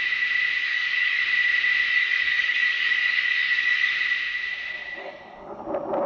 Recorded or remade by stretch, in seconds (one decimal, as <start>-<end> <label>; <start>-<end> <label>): 0.0-0.6 recorded; 0.6-1.2 remade; 1.2-1.9 recorded; 1.9-3.9 remade; 3.9-5.0 recorded; 5.0-5.6 remade; 5.6-6.1 recorded